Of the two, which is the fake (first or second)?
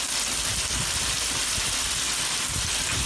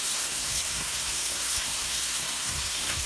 second